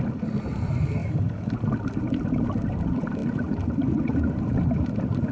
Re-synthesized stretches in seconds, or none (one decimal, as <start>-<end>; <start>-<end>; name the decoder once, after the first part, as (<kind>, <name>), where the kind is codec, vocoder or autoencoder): 1.0-1.5 (codec, DAC)